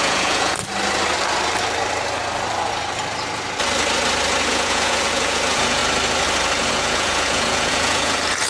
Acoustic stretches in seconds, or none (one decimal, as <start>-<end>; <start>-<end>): 0.6-4.5; 5.8-6.7